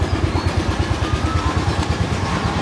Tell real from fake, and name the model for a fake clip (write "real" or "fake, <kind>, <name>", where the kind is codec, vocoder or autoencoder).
real